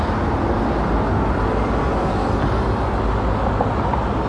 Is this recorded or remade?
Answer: recorded